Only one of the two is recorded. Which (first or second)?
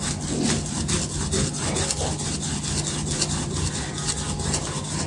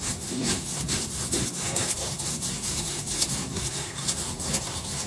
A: first